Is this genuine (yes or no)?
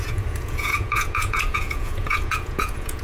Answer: no